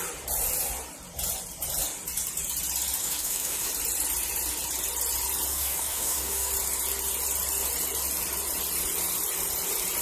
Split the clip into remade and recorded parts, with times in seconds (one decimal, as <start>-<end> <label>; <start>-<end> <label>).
0.0-3.0 recorded; 3.0-3.7 remade; 3.7-5.5 recorded; 5.5-6.5 remade; 6.5-10.0 recorded